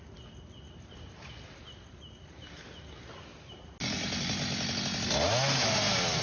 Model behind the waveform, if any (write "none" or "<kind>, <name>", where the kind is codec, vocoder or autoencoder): none